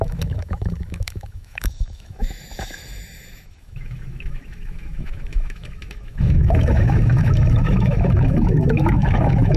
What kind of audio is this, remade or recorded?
remade